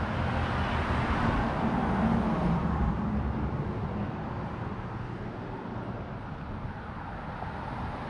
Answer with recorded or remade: recorded